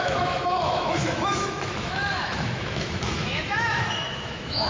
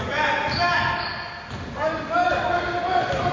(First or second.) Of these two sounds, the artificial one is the first